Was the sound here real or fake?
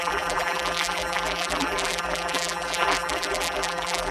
fake